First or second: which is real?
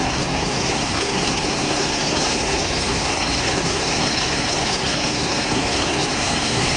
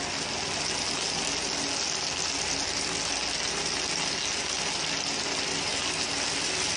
second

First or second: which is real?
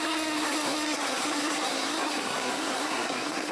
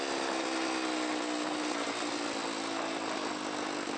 second